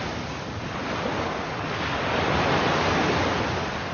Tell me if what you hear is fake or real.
real